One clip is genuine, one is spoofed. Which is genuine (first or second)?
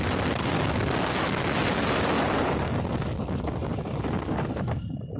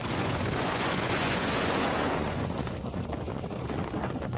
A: first